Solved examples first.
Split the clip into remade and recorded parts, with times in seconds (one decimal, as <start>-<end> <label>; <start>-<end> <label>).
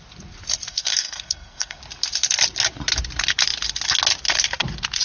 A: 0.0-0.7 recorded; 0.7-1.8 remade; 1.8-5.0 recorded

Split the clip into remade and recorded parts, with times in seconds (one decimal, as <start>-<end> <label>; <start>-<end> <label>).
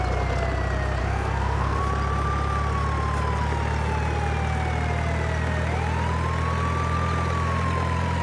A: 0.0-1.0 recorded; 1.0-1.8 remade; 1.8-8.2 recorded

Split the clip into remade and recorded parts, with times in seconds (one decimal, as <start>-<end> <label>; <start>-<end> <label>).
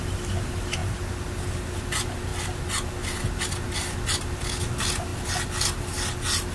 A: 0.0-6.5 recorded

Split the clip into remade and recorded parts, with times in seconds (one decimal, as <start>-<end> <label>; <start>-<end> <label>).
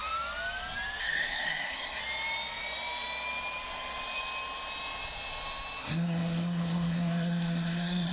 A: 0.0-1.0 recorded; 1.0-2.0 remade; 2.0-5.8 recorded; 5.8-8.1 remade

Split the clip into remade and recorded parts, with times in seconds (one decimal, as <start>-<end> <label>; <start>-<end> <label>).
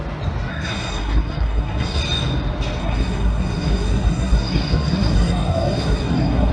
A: 0.0-0.5 recorded; 0.5-2.0 remade; 2.0-2.8 recorded; 2.8-6.5 remade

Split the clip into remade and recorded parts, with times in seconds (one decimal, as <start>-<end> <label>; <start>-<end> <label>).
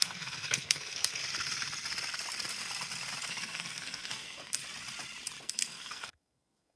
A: 0.0-1.2 remade; 1.2-3.3 recorded; 3.3-4.6 remade; 4.6-5.4 recorded; 5.4-6.8 remade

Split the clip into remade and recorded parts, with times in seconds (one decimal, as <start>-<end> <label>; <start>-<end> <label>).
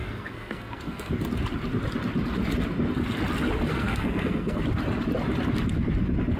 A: 0.0-1.1 remade; 1.1-3.7 recorded; 3.7-4.6 remade; 4.6-6.4 recorded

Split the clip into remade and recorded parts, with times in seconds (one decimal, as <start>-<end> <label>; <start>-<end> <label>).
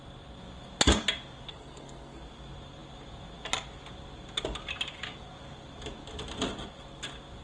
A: 0.0-1.5 recorded; 1.5-2.2 remade; 2.2-7.4 recorded